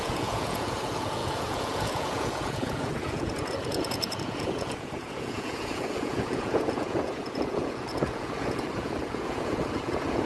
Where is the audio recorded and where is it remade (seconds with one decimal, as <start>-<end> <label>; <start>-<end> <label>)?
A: 0.0-10.3 remade

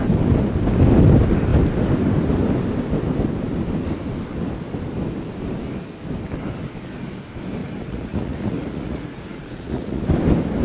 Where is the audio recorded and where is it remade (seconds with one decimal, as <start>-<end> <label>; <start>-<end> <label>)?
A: 0.0-7.6 recorded; 7.6-10.0 remade; 10.0-10.6 recorded